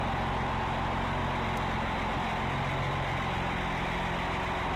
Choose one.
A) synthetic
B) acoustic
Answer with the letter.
B